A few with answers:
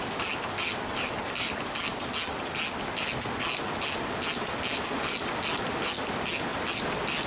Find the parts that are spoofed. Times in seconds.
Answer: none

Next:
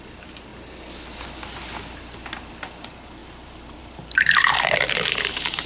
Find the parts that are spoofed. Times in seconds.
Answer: 0.0-0.5; 2.5-5.7

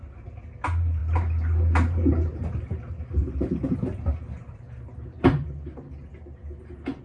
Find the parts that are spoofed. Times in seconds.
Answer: none

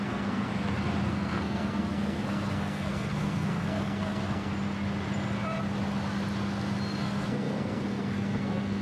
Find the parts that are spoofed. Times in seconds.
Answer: 0.0-0.5; 1.1-4.5; 7.0-8.8

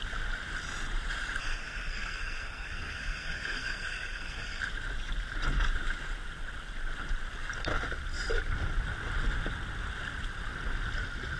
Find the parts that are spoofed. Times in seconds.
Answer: 1.4-4.6

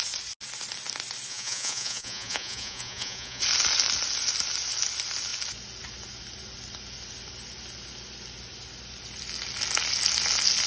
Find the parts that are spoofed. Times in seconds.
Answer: 1.3-3.4